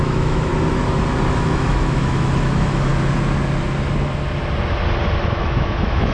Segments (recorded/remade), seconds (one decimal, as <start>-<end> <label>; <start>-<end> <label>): 0.0-0.5 remade; 0.5-1.3 recorded; 1.3-2.9 remade; 2.9-5.2 recorded; 5.2-6.1 remade